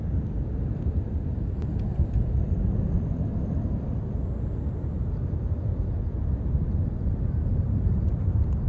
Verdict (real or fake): fake